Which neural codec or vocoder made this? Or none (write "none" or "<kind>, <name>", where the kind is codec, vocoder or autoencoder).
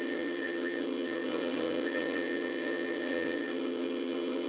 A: vocoder, HiFi-GAN